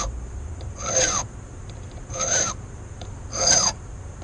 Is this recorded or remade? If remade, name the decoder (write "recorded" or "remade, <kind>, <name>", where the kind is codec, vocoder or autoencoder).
remade, vocoder, BigVGAN v2